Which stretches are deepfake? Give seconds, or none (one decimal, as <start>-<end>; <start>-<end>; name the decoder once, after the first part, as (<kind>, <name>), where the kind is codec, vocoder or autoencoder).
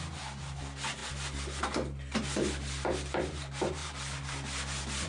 none